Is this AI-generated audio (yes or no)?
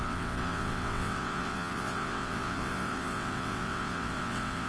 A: yes